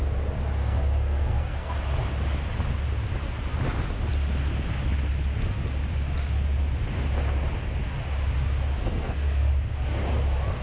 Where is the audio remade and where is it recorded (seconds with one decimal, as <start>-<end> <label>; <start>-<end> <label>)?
0.0-0.6 recorded; 0.6-1.7 remade; 1.7-8.8 recorded; 8.8-9.5 remade; 9.5-10.6 recorded